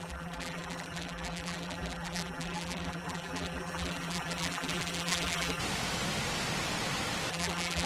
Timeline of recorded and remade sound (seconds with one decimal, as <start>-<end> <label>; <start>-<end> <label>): 0.0-5.6 remade; 5.6-7.3 recorded; 7.3-7.9 remade